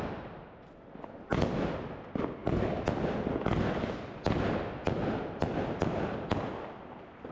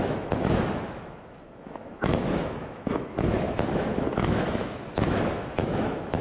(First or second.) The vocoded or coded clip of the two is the second